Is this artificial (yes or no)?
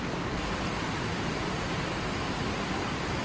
no